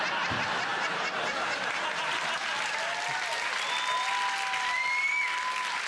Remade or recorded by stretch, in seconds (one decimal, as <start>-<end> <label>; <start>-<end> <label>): 0.0-5.9 recorded